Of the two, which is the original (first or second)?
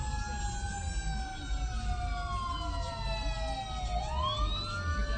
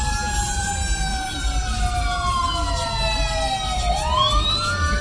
first